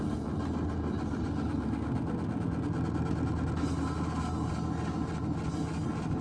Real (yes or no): yes